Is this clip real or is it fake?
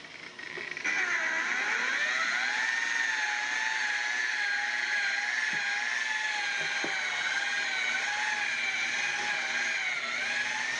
real